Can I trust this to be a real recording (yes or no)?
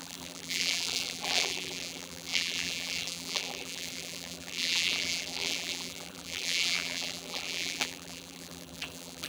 no